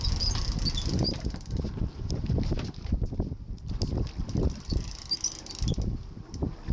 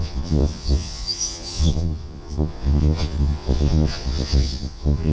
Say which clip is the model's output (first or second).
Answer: second